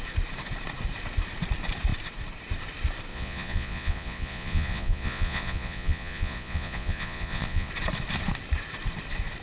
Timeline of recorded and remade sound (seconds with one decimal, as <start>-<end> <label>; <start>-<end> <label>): 0.0-3.1 recorded; 3.1-7.7 remade; 7.7-9.4 recorded